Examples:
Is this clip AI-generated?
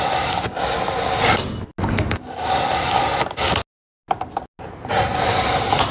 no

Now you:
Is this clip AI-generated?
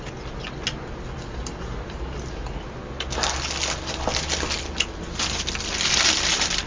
no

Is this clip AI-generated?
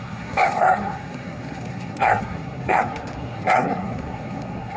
yes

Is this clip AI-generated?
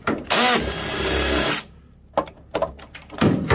no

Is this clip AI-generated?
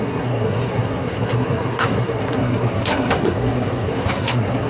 yes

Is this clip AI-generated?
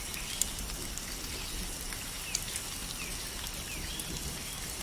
no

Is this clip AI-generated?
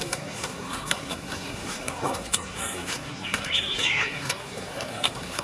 yes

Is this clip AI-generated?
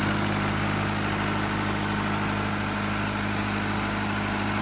no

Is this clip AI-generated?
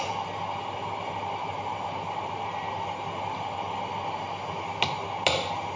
no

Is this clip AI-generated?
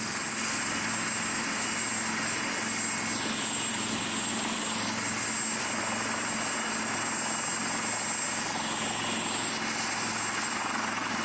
no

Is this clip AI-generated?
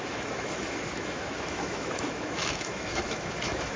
yes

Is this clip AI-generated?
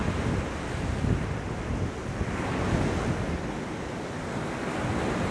no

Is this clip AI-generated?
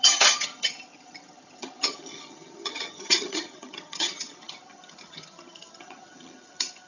yes